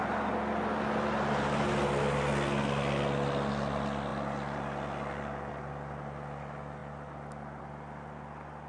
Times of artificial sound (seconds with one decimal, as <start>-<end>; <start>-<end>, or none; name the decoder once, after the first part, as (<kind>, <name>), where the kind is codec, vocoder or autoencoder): none